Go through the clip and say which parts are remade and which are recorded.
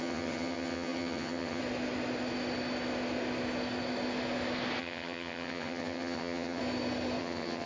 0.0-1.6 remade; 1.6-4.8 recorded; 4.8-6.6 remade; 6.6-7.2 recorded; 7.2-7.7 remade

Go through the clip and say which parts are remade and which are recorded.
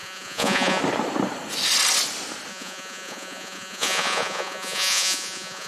0.0-0.8 remade; 0.8-2.5 recorded; 2.5-5.7 remade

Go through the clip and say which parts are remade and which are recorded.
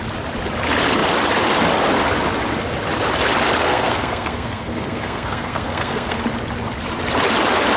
0.0-3.6 recorded; 3.6-6.2 remade; 6.2-7.8 recorded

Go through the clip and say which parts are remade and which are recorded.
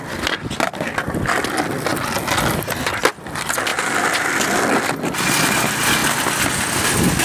0.0-7.2 recorded